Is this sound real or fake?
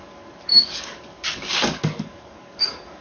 fake